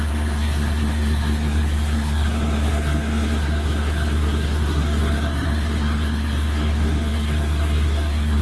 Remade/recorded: remade